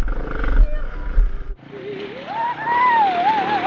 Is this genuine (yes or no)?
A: yes